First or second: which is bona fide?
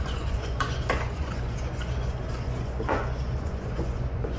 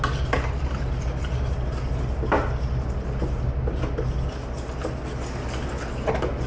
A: second